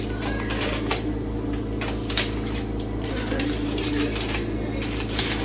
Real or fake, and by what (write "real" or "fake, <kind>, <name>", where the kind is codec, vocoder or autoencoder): real